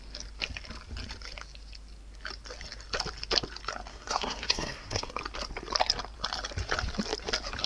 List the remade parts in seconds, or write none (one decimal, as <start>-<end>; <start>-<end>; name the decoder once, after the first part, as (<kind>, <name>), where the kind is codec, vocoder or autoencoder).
3.9-5.1 (codec, SNAC)